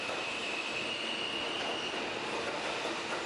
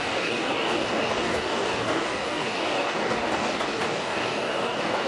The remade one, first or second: second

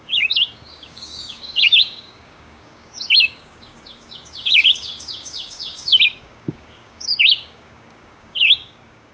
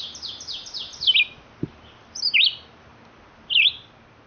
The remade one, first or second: first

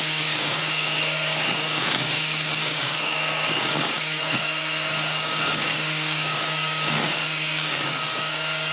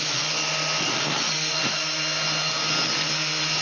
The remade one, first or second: first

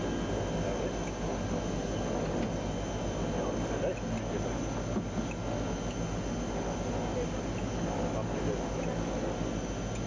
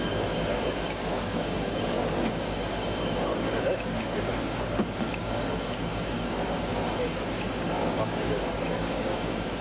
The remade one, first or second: second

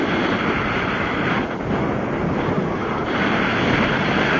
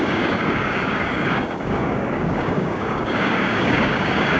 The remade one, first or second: second